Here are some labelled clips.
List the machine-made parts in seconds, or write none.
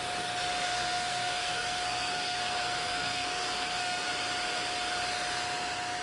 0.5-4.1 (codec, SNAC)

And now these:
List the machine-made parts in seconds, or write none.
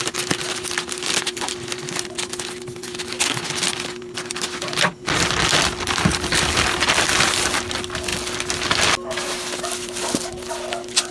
none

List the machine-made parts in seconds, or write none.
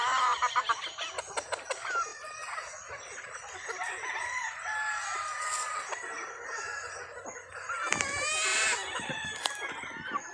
none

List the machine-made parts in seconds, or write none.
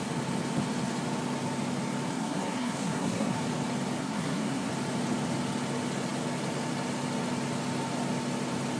2.1-3.4 (codec, SNAC); 4.0-4.7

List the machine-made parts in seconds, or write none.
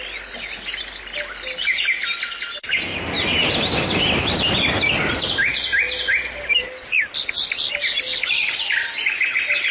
none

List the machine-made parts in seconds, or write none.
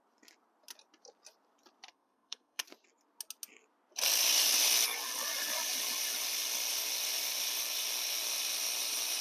1.9-2.6 (codec, SNAC)